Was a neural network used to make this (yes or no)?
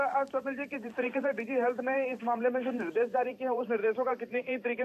yes